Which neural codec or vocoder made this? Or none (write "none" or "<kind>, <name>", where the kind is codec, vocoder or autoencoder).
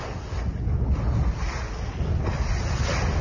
none